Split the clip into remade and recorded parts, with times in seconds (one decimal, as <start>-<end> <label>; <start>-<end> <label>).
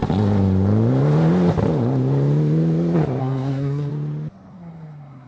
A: 0.0-3.2 recorded; 3.2-3.9 remade; 3.9-4.5 recorded; 4.5-5.3 remade